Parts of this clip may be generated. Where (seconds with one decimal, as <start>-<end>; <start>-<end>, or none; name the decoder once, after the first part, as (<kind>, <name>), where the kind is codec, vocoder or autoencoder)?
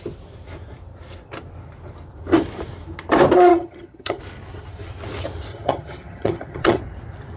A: 3.5-4.2 (vocoder, HiFi-GAN); 5.5-6.8